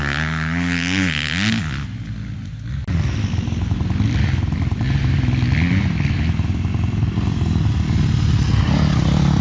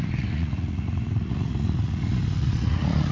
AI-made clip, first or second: second